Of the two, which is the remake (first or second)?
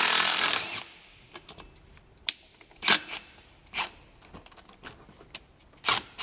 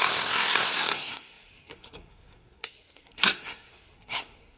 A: second